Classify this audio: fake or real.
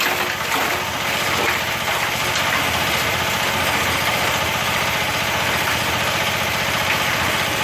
real